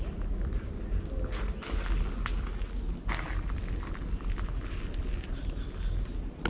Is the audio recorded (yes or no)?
yes